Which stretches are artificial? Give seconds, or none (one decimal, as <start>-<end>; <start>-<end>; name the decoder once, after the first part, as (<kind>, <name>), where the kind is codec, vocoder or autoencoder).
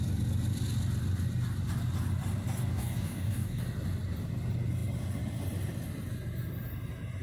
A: 2.7-3.6 (codec, DAC)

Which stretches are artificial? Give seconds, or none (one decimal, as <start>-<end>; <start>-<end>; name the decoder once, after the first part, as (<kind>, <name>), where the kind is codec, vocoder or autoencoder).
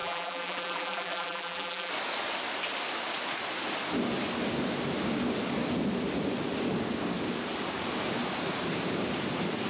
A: 0.0-1.9 (vocoder, BigVGAN v2)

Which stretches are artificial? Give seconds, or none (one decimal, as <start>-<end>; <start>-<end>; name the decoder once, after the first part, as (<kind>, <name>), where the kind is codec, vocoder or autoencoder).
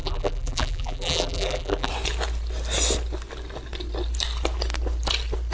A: 0.0-1.9 (vocoder, BigVGAN v2)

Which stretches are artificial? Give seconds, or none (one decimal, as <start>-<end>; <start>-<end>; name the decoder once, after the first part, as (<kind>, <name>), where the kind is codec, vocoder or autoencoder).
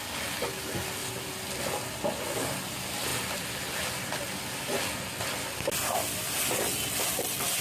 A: none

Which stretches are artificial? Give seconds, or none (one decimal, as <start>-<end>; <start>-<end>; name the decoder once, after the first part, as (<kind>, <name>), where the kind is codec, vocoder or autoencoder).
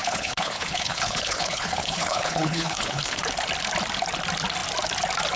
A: 0.0-3.2 (codec, HILCodec)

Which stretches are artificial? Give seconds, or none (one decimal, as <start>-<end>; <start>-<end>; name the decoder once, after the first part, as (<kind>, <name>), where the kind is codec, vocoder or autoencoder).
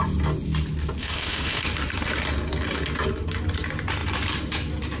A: 1.0-1.6 (autoencoder, DAC-VAE)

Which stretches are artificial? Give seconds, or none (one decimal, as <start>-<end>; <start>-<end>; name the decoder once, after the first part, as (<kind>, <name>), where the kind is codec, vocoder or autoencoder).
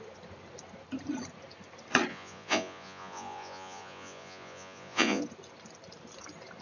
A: 2.1-5.2 (vocoder, Vocos)